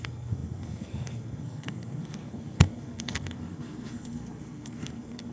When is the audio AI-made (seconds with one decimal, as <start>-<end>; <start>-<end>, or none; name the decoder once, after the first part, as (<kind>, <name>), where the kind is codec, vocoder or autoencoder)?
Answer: 0.0-5.3 (codec, SNAC)